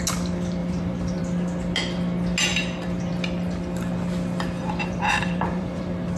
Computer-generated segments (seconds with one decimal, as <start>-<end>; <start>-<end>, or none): 0.6-1.2; 4.6-5.8